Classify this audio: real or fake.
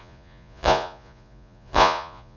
fake